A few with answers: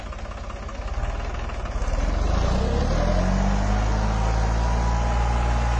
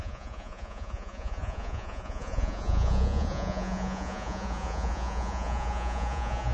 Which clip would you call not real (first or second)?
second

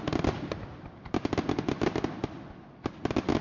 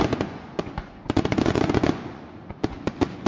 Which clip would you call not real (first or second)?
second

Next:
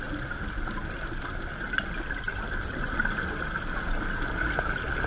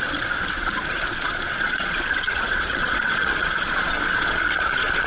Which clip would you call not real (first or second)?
second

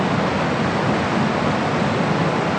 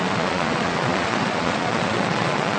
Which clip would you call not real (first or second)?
second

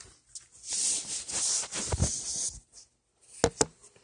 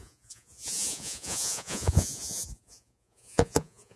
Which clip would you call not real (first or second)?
second